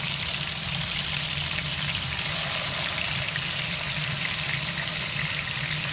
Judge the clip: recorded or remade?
recorded